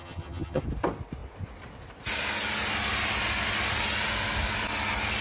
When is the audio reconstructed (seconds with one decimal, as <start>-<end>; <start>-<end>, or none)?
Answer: 0.0-0.6

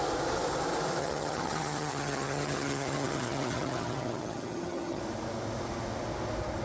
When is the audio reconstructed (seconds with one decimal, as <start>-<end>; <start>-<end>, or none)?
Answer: 1.0-5.0

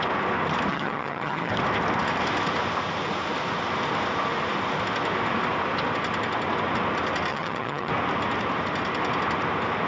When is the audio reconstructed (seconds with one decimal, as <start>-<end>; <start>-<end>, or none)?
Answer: 0.7-1.5; 7.3-7.9

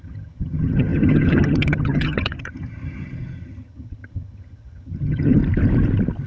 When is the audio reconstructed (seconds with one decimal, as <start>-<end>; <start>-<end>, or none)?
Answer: 0.0-5.4

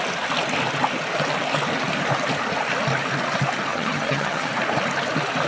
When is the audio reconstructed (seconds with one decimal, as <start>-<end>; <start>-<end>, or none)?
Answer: 3.7-4.5

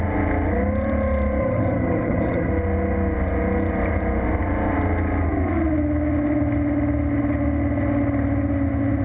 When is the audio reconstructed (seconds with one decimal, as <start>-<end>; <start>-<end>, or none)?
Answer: 1.4-2.5

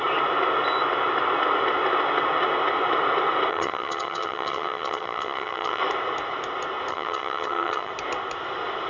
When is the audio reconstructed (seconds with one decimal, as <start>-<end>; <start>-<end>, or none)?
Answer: 3.5-5.8; 6.9-7.9

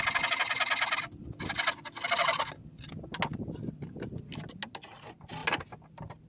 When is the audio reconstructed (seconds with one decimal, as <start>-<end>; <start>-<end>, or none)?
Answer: none